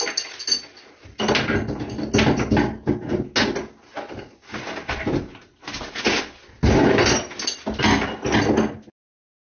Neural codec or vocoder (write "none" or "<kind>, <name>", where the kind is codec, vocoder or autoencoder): none